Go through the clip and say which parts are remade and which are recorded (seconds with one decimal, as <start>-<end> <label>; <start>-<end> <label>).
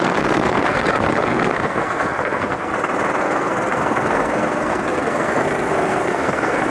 0.0-2.7 remade; 2.7-3.2 recorded; 3.2-6.7 remade